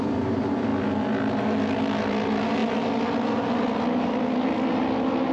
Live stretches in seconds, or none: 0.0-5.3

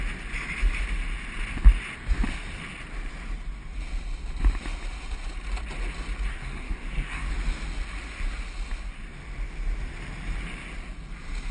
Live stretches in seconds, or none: 0.0-6.3; 7.3-11.5

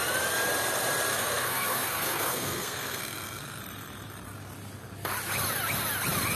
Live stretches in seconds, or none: 0.0-1.1; 3.6-6.3

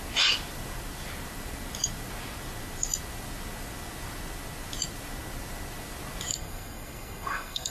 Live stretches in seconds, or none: 0.0-6.3

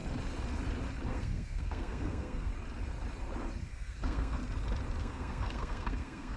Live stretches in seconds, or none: 0.0-1.1; 2.5-3.7; 4.4-5.0

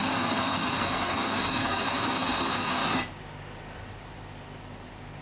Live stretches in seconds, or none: 2.8-5.2

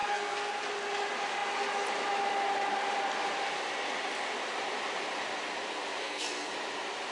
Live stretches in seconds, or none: 0.5-6.0; 6.5-7.1